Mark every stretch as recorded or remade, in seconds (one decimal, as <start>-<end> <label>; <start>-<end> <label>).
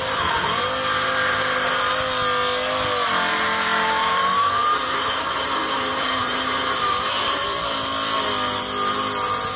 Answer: 0.0-3.3 recorded; 3.3-7.6 remade; 7.6-9.6 recorded